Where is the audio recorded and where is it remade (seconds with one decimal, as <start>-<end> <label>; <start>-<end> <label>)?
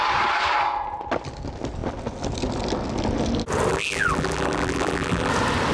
0.0-3.7 recorded; 3.7-5.3 remade; 5.3-5.7 recorded